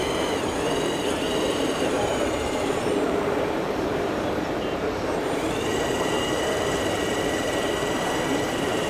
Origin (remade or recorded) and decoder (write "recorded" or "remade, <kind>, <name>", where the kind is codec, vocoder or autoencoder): remade, vocoder, BigVGAN v2